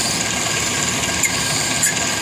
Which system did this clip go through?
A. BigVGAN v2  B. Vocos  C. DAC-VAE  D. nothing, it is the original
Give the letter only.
D